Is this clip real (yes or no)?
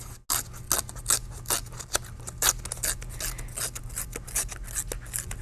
yes